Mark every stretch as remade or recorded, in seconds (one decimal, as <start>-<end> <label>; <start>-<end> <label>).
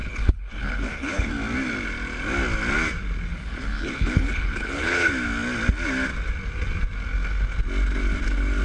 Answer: 0.0-1.3 remade; 1.3-3.3 recorded; 3.3-5.1 remade; 5.1-8.6 recorded